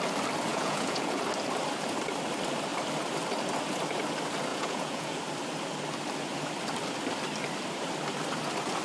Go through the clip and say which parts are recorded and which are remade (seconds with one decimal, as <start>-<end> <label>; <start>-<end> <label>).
0.0-0.5 recorded; 0.5-1.2 remade; 1.2-4.5 recorded; 4.5-5.2 remade; 5.2-8.8 recorded